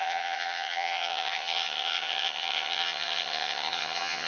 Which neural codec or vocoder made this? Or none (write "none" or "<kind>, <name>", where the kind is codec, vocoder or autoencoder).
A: vocoder, HiFi-GAN